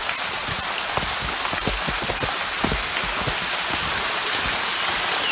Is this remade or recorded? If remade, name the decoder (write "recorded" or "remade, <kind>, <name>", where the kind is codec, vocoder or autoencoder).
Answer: recorded